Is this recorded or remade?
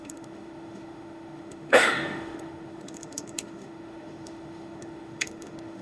remade